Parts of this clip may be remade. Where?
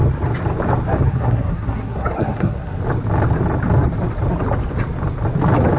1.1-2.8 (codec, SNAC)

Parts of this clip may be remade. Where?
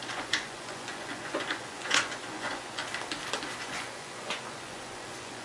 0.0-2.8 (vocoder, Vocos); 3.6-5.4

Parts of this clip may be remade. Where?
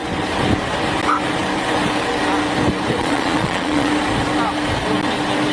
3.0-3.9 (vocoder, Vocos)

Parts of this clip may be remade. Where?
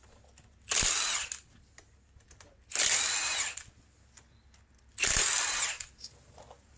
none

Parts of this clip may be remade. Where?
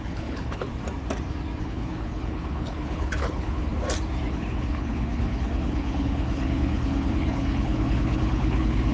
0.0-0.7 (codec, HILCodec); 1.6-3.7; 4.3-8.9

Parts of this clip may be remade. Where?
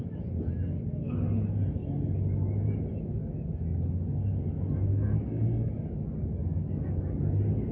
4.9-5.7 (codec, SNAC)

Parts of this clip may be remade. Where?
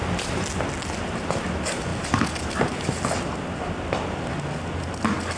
none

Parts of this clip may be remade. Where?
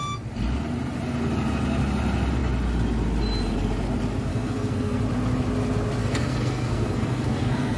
4.3-5.0 (codec, SNAC); 6.0-7.8